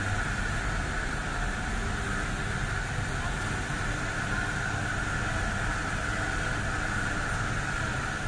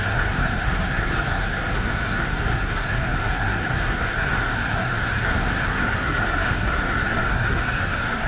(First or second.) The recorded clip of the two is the first